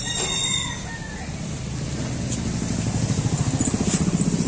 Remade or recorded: recorded